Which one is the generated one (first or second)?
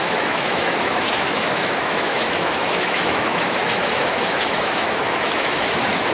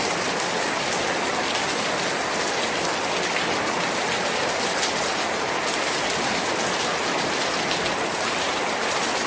first